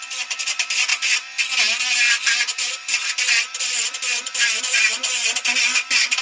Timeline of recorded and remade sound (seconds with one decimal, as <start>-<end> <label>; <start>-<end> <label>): 0.0-6.2 recorded